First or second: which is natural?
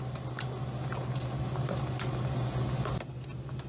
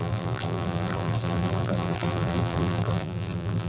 first